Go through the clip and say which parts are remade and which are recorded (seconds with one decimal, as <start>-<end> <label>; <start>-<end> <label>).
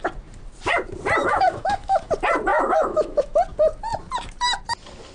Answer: 0.0-1.2 recorded; 1.2-2.1 remade; 2.1-2.5 recorded; 2.5-3.4 remade; 3.4-5.1 recorded